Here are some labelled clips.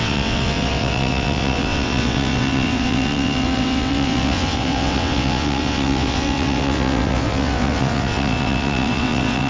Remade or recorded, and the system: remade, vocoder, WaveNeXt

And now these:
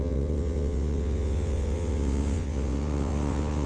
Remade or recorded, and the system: remade, vocoder, WaveNeXt